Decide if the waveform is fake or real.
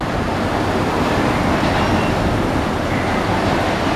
real